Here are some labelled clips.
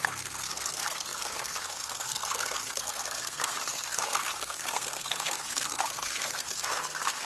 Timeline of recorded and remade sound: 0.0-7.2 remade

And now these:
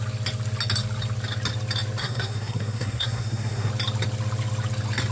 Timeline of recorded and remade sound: 0.0-2.0 recorded; 2.0-3.7 remade; 3.7-5.1 recorded